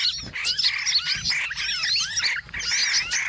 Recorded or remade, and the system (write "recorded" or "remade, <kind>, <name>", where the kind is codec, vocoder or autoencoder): recorded